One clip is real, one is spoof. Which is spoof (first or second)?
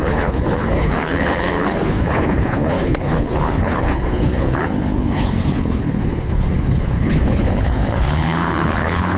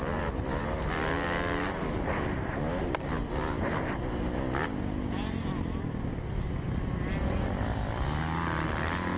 first